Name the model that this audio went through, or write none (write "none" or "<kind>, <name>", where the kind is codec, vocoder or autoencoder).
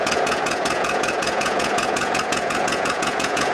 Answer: vocoder, Vocos